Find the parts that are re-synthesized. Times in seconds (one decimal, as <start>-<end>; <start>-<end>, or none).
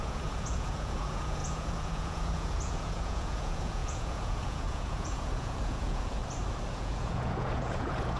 0.0-6.2; 6.7-8.2